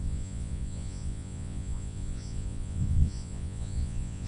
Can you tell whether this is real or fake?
fake